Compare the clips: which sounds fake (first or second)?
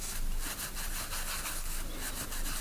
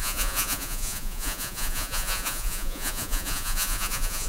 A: second